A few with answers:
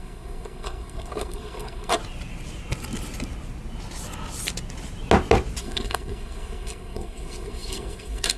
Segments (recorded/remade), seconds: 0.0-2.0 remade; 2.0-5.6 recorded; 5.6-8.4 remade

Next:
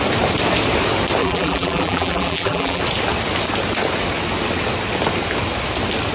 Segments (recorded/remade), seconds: 0.0-1.2 recorded; 1.2-2.8 remade; 2.8-6.1 recorded

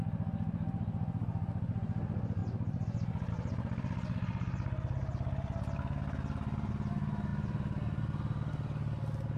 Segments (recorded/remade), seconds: 0.0-9.4 recorded

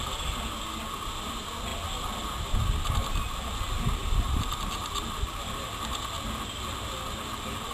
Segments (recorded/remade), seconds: 0.0-4.0 recorded; 4.0-4.7 remade; 4.7-7.7 recorded

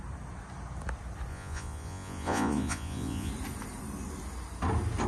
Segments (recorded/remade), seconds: 0.0-1.3 recorded; 1.3-3.3 remade; 3.3-5.1 recorded

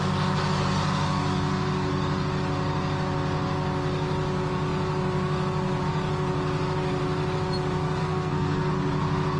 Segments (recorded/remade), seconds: 0.0-8.0 recorded; 8.0-8.7 remade; 8.7-9.4 recorded

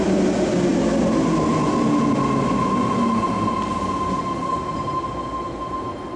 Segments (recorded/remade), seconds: 0.0-6.2 recorded